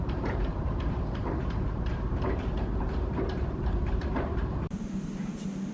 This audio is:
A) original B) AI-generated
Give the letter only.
B